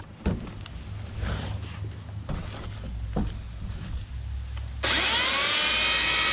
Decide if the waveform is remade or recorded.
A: recorded